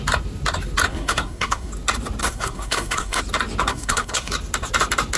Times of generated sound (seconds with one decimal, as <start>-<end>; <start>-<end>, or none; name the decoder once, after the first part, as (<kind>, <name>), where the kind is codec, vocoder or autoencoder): 0.9-1.7 (codec, SNAC); 2.2-3.2; 3.7-4.3